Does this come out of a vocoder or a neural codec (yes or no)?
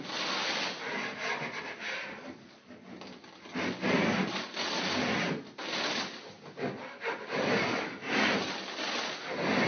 no